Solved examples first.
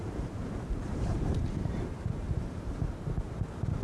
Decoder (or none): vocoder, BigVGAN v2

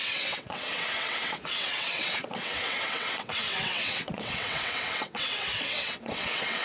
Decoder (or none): vocoder, WaveNeXt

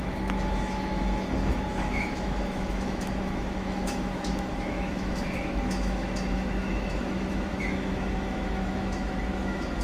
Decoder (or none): autoencoder, DAC-VAE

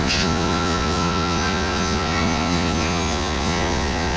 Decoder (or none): vocoder, Vocos